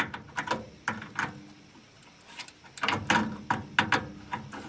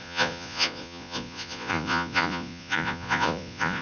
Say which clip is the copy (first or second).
second